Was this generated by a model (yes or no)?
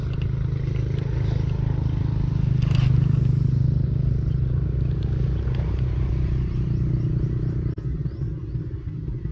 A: no